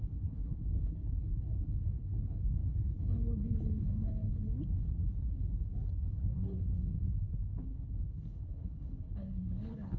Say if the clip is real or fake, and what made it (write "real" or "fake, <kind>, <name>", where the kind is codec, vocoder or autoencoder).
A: fake, codec, HILCodec